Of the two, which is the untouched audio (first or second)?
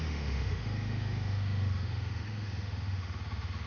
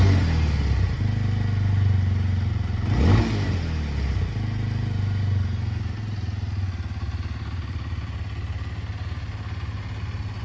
second